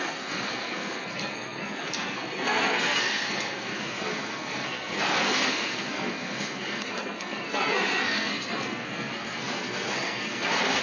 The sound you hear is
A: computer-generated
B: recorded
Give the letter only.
A